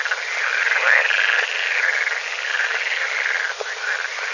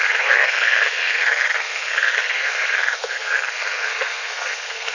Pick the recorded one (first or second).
first